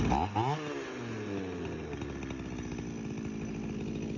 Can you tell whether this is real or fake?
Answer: real